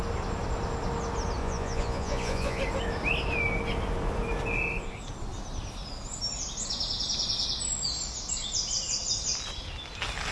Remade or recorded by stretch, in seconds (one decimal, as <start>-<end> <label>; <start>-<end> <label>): 0.0-1.4 recorded; 1.4-2.6 remade; 2.6-10.3 recorded

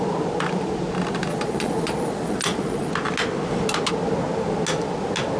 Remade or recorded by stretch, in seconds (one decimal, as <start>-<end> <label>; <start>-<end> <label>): 0.0-1.3 recorded; 1.3-2.9 remade; 2.9-5.4 recorded

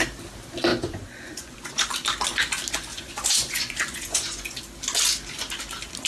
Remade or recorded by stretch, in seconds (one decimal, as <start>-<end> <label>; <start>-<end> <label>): 0.0-0.7 recorded; 0.7-1.9 remade; 1.9-2.9 recorded; 2.9-4.6 remade; 4.6-6.1 recorded

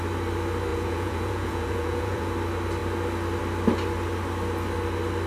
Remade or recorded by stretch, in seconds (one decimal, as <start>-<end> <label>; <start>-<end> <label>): 0.0-0.7 recorded; 0.7-2.3 remade; 2.3-5.3 recorded